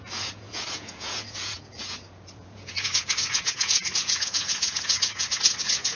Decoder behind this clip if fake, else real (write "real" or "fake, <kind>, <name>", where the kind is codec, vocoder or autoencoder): fake, vocoder, Vocos